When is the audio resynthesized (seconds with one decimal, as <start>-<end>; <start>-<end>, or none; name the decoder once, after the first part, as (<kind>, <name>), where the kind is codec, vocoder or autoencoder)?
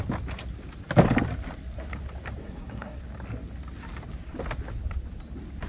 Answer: 2.4-3.0 (codec, SNAC)